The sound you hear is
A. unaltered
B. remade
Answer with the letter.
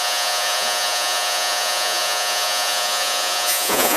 B